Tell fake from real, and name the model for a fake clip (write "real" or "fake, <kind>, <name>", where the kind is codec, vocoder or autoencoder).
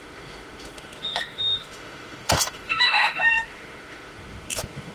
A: fake, autoencoder, DAC-VAE